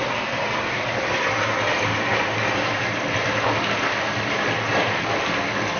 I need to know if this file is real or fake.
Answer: real